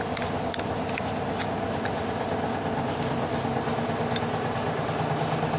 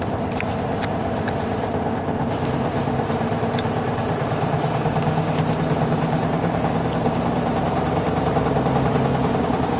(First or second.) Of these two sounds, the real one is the first